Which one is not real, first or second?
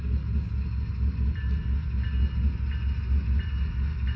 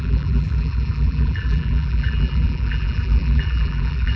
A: second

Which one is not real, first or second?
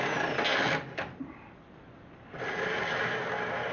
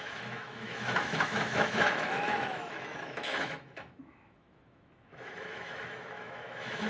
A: second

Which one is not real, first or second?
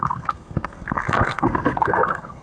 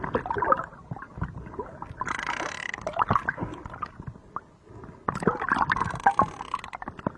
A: first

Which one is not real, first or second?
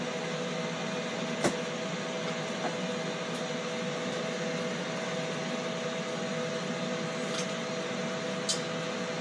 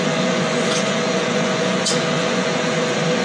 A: second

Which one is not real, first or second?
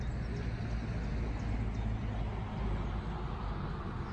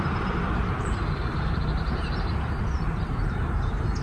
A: second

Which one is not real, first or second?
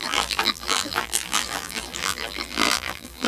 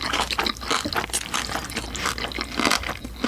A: first